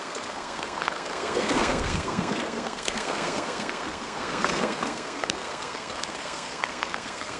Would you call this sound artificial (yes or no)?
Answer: yes